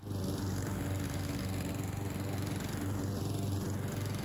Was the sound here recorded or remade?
recorded